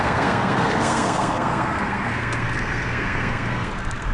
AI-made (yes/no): yes